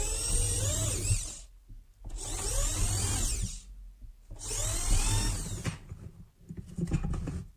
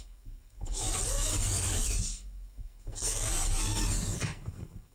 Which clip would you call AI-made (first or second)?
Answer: second